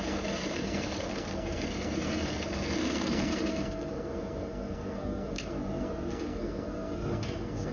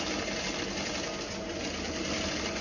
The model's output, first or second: first